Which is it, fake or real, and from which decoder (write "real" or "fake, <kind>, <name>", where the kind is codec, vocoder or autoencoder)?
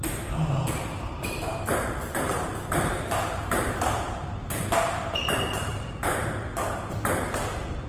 fake, vocoder, BigVGAN v2